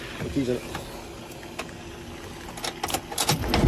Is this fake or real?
real